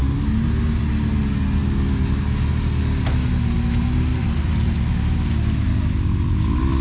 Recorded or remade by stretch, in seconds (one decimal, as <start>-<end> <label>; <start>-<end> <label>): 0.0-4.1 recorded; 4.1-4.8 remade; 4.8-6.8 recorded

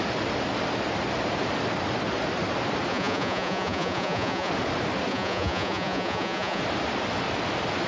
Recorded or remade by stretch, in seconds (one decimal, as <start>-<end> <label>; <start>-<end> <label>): 0.0-2.9 recorded; 2.9-4.5 remade; 4.5-5.1 recorded; 5.1-6.6 remade; 6.6-7.9 recorded

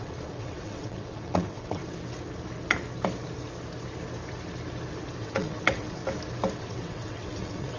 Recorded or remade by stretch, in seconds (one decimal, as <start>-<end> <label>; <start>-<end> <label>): 0.0-1.8 remade; 1.8-5.1 recorded; 5.1-6.0 remade; 6.0-6.6 recorded; 6.6-7.8 remade

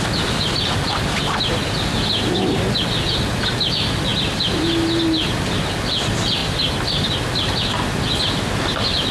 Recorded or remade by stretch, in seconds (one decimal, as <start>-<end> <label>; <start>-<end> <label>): 0.0-9.1 recorded

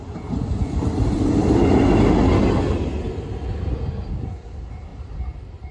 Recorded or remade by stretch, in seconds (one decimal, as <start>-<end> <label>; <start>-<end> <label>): 0.0-5.7 recorded

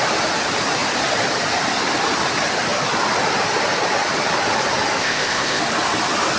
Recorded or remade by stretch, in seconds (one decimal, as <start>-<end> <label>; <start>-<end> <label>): 0.0-5.0 recorded; 5.0-5.6 remade; 5.6-6.4 recorded

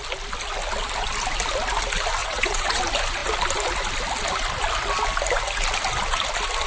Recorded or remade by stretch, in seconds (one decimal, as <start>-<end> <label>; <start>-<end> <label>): 0.0-2.2 recorded; 2.2-2.8 remade; 2.8-6.7 recorded

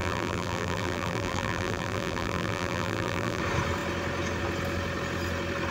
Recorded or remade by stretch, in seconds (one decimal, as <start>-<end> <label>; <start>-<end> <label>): 0.0-3.4 remade; 3.4-5.7 recorded